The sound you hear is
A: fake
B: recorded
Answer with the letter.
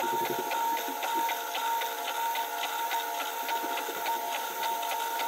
B